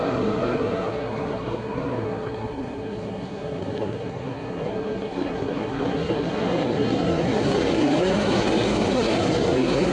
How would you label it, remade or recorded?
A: remade